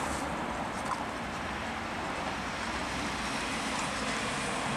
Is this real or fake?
real